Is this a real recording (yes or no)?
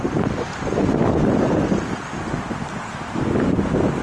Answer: yes